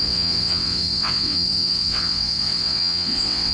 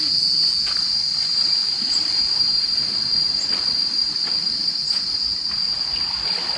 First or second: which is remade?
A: first